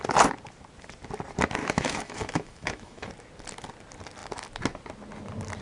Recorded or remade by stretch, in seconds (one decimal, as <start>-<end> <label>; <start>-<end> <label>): 0.0-1.6 recorded; 1.6-3.1 remade; 3.1-5.6 recorded